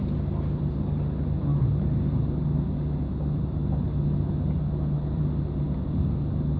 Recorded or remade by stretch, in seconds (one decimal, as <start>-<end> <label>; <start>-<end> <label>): 0.0-6.6 recorded